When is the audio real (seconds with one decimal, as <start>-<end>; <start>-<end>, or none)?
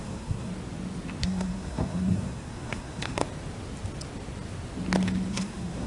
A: 0.5-1.2; 3.2-5.3